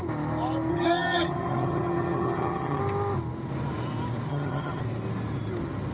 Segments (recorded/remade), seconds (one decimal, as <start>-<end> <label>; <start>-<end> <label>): 0.0-0.7 recorded; 0.7-2.8 remade; 2.8-4.3 recorded; 4.3-4.8 remade; 4.8-5.9 recorded